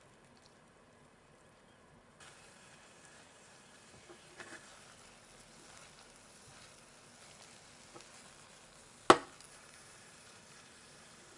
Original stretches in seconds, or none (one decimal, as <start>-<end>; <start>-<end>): 4.7-9.5